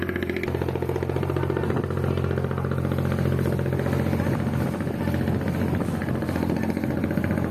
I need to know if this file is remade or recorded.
recorded